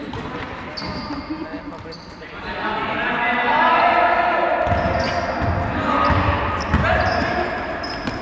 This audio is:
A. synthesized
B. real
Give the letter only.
B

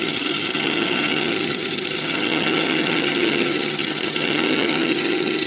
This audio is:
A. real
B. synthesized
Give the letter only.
B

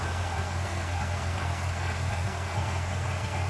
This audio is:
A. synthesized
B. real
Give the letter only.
A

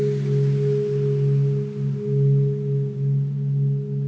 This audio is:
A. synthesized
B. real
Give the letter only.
B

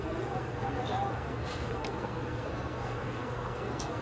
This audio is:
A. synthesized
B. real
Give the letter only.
A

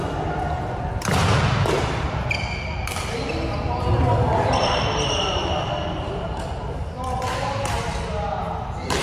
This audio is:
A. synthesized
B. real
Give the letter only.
B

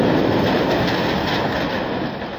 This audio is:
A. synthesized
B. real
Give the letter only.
B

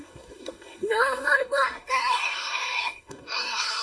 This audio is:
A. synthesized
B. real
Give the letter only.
A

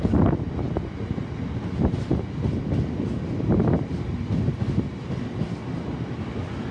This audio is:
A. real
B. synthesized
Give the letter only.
A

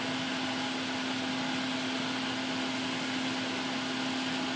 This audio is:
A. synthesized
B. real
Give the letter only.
B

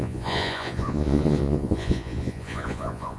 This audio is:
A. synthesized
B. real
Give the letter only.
A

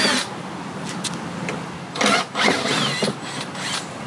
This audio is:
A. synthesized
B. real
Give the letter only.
B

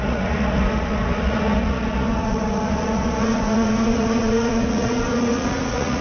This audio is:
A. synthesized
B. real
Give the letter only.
A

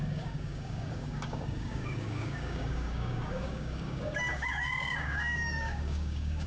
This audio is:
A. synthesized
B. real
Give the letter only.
A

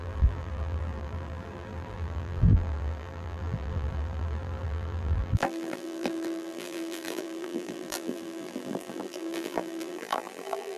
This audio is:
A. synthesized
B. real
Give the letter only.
A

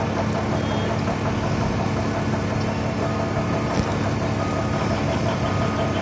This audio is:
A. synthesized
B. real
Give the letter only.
B